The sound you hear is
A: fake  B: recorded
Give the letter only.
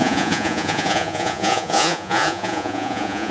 A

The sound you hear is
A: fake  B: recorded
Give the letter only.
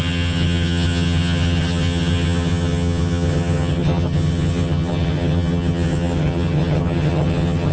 A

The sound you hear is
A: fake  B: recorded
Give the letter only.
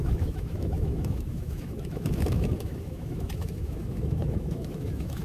A